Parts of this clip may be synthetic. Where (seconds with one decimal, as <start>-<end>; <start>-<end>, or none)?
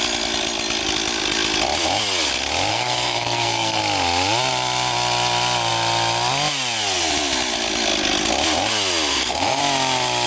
2.7-3.8; 9.1-9.6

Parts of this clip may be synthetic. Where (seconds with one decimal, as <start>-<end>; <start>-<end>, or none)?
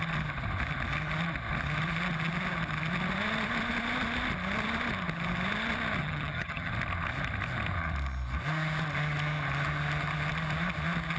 6.0-6.7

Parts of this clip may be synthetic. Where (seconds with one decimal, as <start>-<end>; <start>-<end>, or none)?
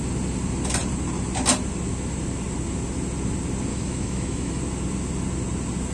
3.7-4.6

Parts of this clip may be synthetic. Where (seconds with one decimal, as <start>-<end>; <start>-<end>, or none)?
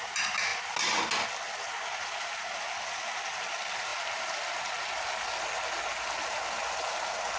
none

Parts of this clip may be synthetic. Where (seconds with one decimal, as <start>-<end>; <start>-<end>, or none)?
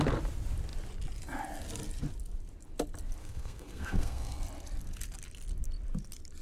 3.2-4.4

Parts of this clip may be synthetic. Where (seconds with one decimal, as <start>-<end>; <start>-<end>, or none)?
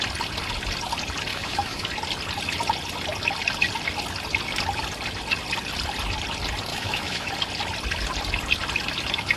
1.3-1.9; 6.7-7.3